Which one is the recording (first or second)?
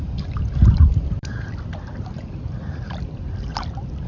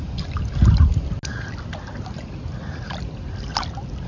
second